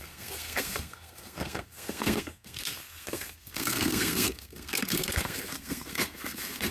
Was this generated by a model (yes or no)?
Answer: yes